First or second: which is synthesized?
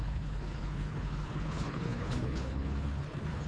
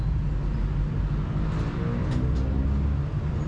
first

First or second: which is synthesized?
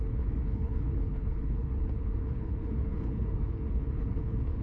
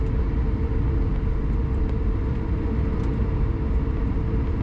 first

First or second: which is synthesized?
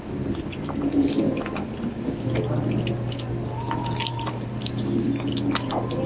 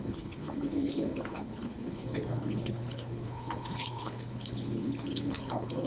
second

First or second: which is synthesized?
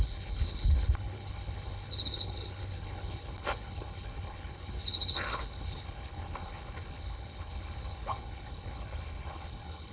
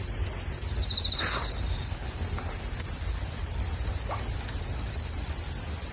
first